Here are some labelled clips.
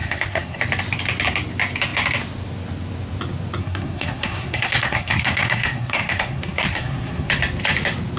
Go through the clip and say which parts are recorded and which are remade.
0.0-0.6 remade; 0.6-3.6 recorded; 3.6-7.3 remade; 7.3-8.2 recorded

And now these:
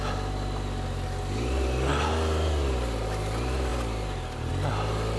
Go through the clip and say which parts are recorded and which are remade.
0.0-5.2 recorded